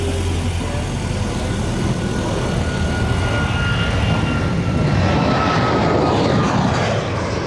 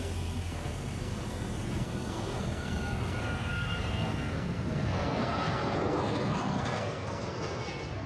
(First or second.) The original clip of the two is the first